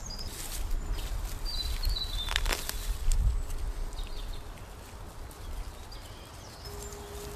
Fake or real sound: real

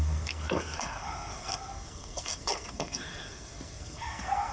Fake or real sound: fake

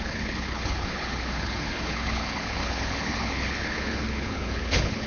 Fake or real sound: fake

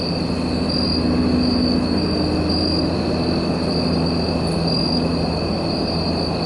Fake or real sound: real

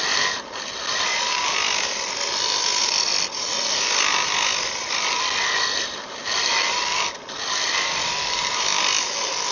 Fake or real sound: real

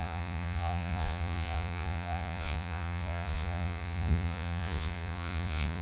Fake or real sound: fake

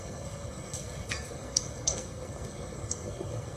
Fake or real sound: fake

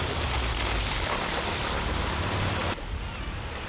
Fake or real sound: real